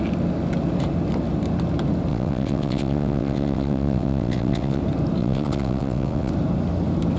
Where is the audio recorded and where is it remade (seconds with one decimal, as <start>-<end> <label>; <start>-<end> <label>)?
0.0-2.1 recorded; 2.1-4.8 remade; 4.8-5.2 recorded; 5.2-6.3 remade; 6.3-7.2 recorded